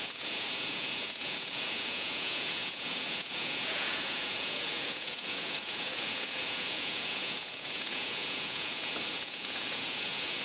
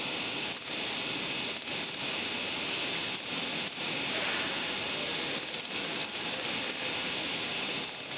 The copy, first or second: first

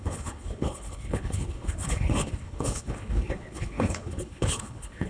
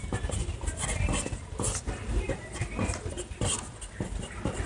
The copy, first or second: first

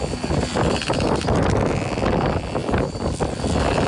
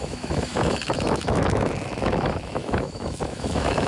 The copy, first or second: second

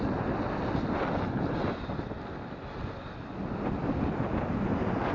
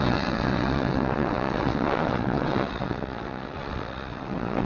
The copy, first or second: second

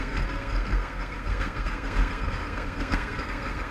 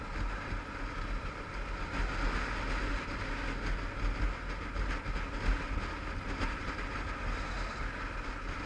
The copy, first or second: first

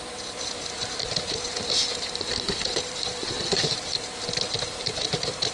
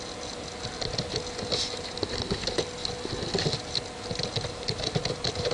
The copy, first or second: first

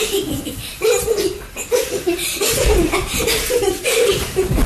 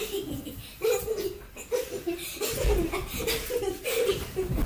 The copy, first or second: first